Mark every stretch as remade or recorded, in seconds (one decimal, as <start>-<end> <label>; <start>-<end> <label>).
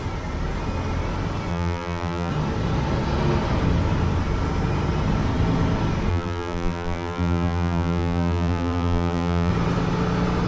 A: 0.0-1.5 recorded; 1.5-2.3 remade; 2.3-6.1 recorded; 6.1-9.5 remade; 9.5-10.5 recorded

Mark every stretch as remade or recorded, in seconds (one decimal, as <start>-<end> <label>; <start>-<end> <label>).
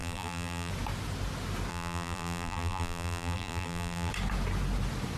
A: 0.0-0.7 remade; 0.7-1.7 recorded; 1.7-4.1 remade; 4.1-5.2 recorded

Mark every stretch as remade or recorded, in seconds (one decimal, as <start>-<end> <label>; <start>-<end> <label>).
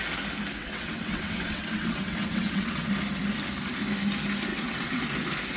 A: 0.0-0.6 recorded; 0.6-2.9 remade; 2.9-4.5 recorded; 4.5-5.0 remade; 5.0-5.6 recorded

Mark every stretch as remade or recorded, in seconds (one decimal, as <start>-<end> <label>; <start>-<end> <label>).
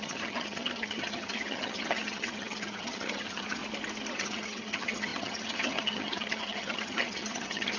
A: 0.0-3.6 remade; 3.6-4.1 recorded; 4.1-7.8 remade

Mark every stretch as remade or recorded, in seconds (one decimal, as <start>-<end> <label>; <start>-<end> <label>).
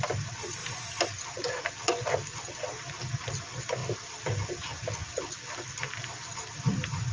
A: 0.0-0.6 recorded; 0.6-1.7 remade; 1.7-6.0 recorded; 6.0-7.1 remade